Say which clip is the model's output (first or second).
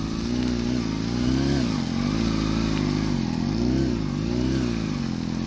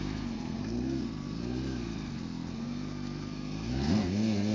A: second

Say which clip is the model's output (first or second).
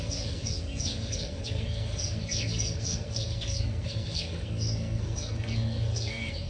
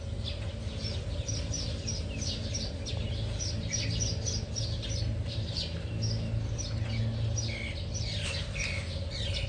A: first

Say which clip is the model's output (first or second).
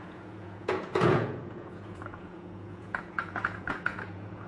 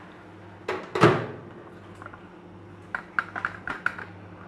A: first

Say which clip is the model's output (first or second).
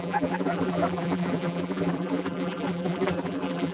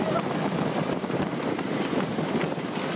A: first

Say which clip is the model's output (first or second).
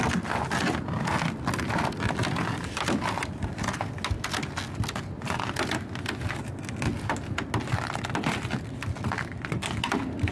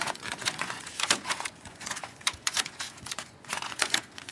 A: second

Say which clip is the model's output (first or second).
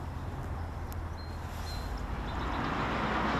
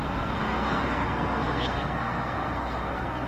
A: second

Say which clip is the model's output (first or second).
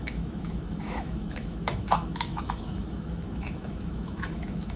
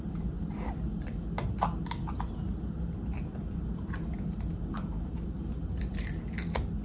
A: first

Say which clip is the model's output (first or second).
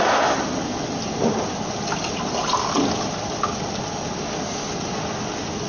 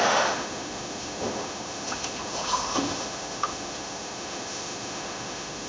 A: second